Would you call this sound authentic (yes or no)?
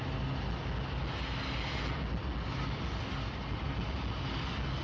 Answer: yes